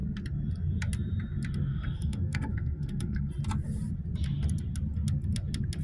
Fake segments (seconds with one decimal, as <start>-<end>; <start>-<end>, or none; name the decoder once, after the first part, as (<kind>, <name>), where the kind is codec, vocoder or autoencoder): 1.7-3.3 (codec, SNAC)